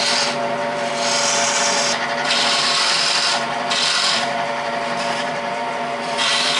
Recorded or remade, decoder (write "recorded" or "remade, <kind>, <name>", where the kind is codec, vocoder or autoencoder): remade, vocoder, BigVGAN v2